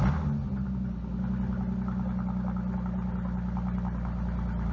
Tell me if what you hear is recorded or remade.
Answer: recorded